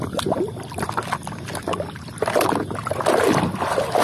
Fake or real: real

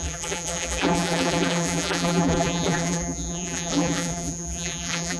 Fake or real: fake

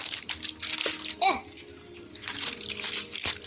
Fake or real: real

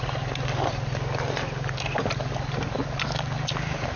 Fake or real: real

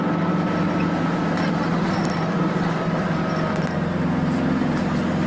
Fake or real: real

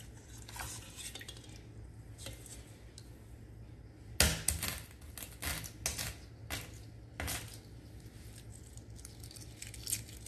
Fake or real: real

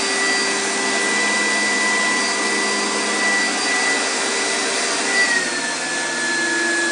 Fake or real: real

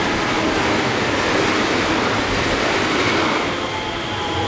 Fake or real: real